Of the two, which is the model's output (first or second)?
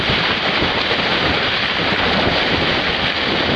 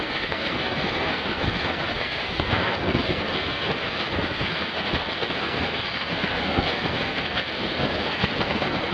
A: second